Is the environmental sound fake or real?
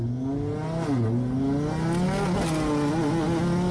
real